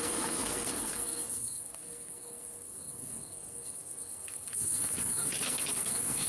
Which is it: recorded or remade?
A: remade